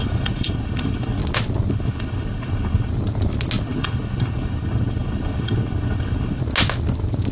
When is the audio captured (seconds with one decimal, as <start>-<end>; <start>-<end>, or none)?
1.2-1.7; 2.9-3.6; 6.4-7.3